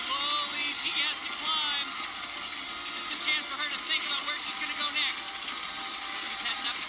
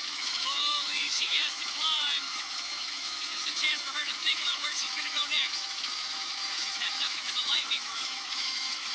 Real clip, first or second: first